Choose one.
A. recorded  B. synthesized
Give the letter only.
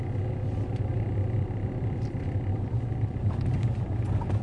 B